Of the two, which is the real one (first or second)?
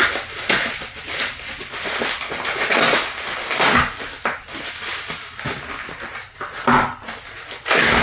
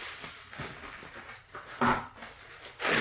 first